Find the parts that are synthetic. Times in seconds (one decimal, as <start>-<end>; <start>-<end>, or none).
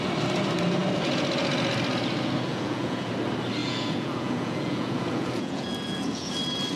2.5-3.1; 3.6-6.3